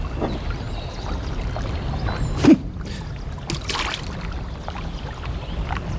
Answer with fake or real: real